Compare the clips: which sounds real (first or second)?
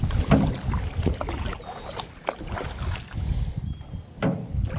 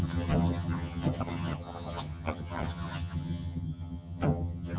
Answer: first